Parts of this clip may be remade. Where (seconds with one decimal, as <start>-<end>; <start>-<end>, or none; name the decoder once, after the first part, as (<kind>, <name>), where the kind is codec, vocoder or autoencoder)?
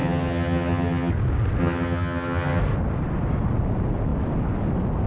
0.0-1.1 (vocoder, HiFi-GAN); 1.6-2.6